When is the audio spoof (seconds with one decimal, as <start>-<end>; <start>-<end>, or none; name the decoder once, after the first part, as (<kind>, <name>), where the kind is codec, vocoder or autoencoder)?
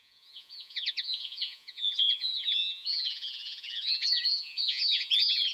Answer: 0.0-5.5 (vocoder, Vocos)